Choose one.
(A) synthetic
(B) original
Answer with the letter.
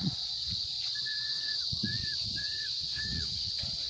A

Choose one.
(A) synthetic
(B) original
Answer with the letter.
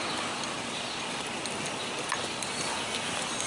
B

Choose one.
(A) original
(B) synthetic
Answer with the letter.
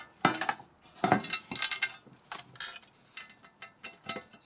A